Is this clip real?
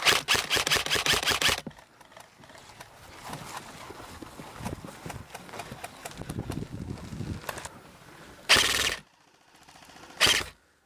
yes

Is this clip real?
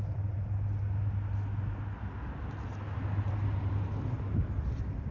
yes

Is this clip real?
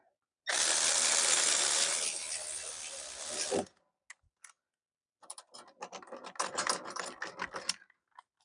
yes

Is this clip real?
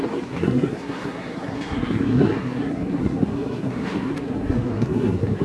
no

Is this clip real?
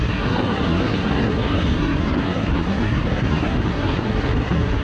no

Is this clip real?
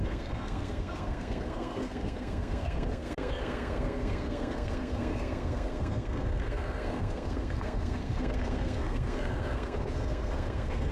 no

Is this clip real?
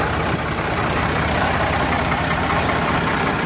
no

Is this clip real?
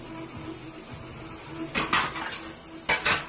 yes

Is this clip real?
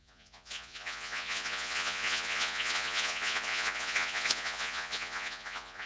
no